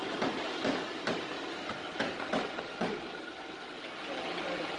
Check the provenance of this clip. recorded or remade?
recorded